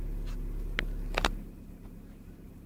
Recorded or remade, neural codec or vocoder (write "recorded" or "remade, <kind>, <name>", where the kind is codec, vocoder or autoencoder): recorded